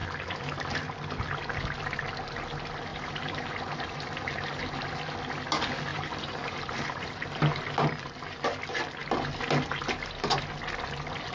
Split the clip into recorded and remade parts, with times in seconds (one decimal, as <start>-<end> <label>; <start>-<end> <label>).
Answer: 0.0-2.9 recorded; 2.9-4.9 remade; 4.9-5.9 recorded; 5.9-7.4 remade; 7.4-11.3 recorded